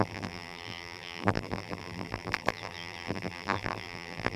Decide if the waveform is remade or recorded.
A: remade